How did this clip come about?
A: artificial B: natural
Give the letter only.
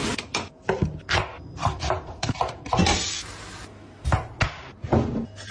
B